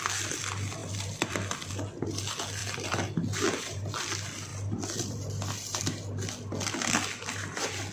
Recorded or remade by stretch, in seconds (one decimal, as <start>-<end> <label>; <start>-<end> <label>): 0.0-0.8 recorded; 0.8-1.7 remade; 1.7-2.6 recorded; 2.6-4.1 remade; 4.1-4.5 recorded; 4.5-5.8 remade; 5.8-7.9 recorded